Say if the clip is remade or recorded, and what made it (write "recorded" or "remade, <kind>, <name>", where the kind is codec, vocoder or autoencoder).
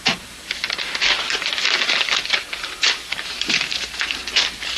remade, vocoder, BigVGAN v2